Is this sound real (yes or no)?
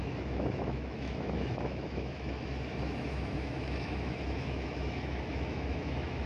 no